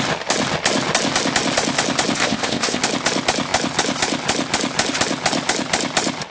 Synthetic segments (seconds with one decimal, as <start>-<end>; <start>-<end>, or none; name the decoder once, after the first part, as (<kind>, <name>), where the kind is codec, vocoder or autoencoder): 2.2-2.8 (codec, ZipCodec)